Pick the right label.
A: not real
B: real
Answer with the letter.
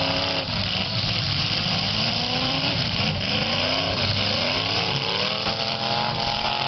A